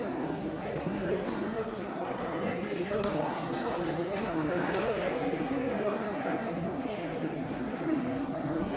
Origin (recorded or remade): remade